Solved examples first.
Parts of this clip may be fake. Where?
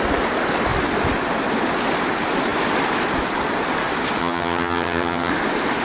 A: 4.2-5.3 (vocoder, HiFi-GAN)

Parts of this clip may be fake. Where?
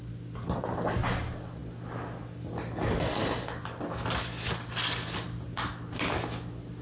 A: none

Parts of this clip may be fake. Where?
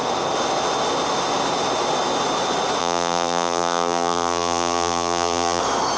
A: 2.8-5.6 (vocoder, BigVGAN v2)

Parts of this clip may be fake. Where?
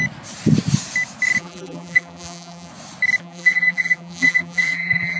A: 1.4-2.7 (vocoder, BigVGAN v2); 3.2-5.2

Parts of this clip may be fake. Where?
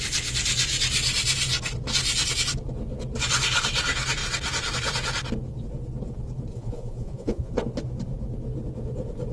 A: 6.5-7.5 (vocoder, Vocos)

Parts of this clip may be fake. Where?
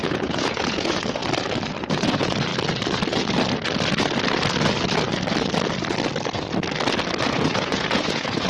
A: 0.0-1.2 (vocoder, Vocos); 1.8-2.5; 7.3-8.5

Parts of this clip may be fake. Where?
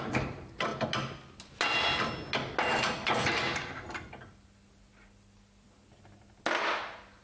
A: none